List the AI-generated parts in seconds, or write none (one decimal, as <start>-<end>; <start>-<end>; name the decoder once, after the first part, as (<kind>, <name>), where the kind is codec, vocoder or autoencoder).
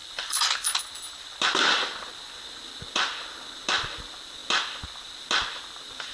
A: 0.0-0.8 (vocoder, BigVGAN v2)